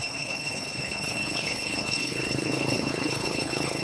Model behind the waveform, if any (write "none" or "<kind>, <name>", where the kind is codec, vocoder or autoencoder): codec, HILCodec